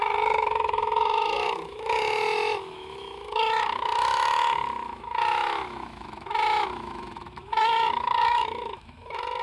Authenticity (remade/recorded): remade